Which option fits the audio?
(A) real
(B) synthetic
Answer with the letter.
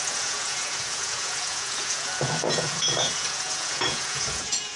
B